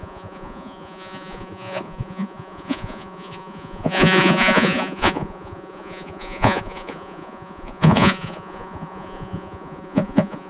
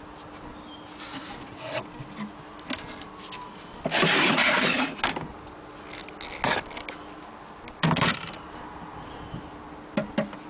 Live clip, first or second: second